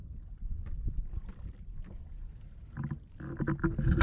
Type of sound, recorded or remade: recorded